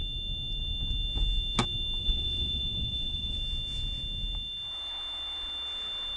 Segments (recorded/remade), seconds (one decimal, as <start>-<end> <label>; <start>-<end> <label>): 0.0-2.0 recorded; 2.0-3.4 remade; 3.4-6.2 recorded